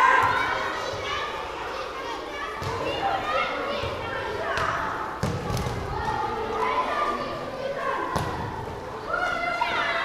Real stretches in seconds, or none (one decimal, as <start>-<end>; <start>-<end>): 0.0-10.0

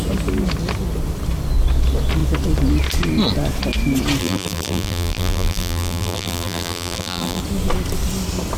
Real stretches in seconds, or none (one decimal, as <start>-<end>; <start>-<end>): 0.0-4.2; 7.4-8.6

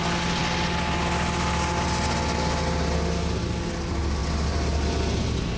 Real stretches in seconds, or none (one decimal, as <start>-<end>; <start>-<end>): 0.0-5.6

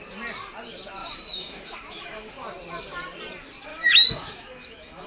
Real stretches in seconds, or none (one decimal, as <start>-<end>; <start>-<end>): 0.0-1.0; 2.3-3.7